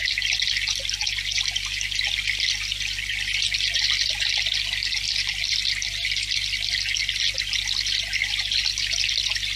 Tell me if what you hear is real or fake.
real